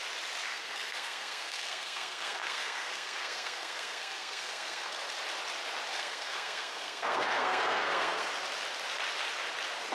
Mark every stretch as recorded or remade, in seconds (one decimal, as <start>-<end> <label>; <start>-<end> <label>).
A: 0.0-0.5 recorded; 0.5-5.0 remade; 5.0-5.9 recorded; 5.9-8.3 remade; 8.3-9.9 recorded